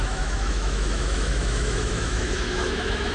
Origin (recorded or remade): remade